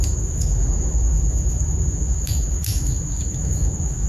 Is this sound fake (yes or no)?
yes